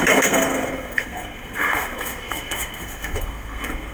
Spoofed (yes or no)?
yes